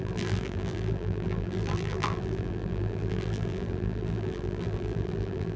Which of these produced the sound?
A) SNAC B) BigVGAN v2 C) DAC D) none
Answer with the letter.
B